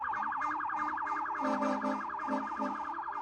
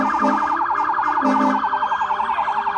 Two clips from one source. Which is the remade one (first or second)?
first